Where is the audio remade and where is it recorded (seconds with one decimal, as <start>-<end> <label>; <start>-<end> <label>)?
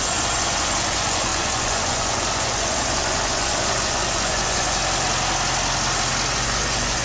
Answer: 0.0-4.8 remade; 4.8-6.3 recorded; 6.3-7.0 remade